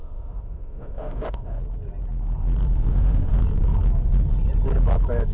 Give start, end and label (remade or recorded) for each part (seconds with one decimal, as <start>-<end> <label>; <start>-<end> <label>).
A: 0.0-1.6 remade; 1.6-2.9 recorded; 2.9-3.4 remade; 3.4-5.3 recorded